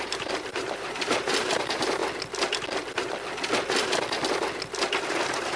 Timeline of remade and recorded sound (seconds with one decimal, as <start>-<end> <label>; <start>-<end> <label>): 0.0-2.0 remade; 2.0-5.6 recorded